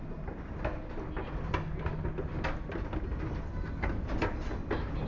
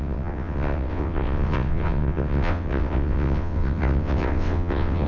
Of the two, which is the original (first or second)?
first